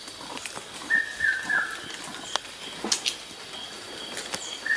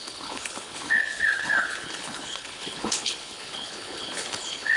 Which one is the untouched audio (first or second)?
first